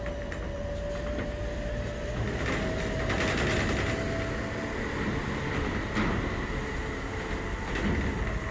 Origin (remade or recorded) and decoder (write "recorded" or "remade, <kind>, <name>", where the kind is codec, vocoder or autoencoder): recorded